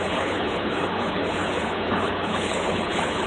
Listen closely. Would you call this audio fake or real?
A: fake